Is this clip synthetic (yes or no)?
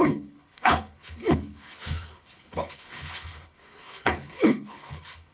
yes